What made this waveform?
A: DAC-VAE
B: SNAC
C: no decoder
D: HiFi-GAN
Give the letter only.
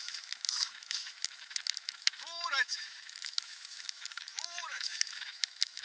A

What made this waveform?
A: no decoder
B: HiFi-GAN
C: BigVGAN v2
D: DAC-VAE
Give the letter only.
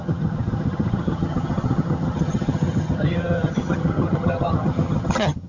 B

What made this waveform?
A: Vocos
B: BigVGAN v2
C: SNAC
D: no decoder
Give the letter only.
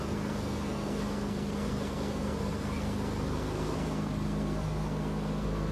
C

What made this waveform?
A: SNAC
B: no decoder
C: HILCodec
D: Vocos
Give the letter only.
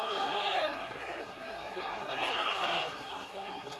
A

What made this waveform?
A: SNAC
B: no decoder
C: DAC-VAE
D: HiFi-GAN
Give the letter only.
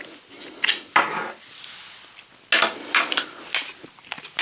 B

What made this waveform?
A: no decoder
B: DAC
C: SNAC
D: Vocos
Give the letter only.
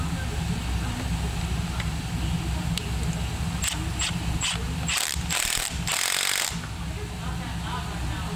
A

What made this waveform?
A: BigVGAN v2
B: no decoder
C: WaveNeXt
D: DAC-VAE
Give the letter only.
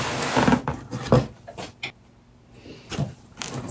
B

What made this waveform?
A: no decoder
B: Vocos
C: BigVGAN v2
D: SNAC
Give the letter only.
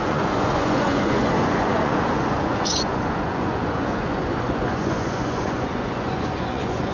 B